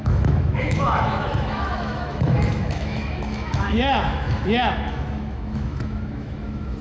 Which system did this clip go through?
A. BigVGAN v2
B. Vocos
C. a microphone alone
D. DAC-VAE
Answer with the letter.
D